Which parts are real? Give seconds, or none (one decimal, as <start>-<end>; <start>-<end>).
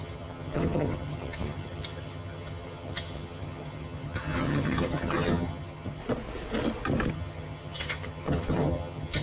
6.0-7.1